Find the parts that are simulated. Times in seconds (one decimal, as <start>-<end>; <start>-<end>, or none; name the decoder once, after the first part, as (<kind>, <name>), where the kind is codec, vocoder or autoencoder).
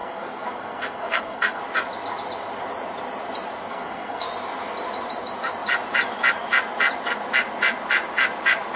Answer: 0.0-1.6 (codec, SNAC); 3.7-4.3